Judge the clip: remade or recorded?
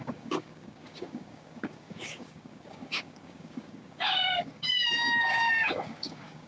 remade